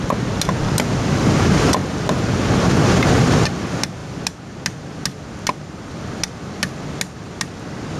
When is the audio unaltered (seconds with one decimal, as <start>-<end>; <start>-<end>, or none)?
0.0-8.0